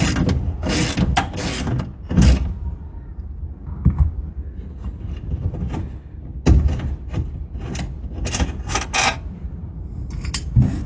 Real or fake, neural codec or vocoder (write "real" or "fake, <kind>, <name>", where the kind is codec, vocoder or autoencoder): real